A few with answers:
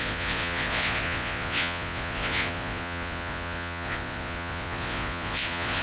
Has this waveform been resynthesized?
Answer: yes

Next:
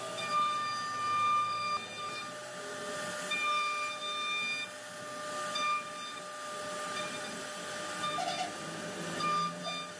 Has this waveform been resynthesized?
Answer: no